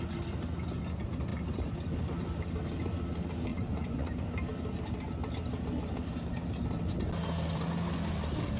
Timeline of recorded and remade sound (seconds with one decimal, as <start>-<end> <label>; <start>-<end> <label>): 0.0-3.5 recorded; 3.5-4.1 remade; 4.1-8.6 recorded